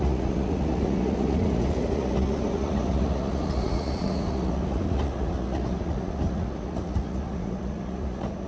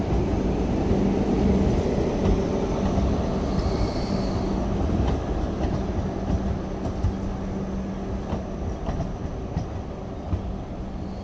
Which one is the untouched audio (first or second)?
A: second